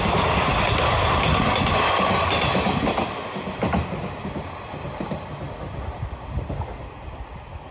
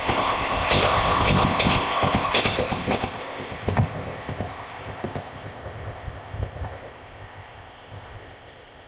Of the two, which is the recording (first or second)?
first